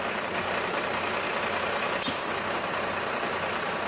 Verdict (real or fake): real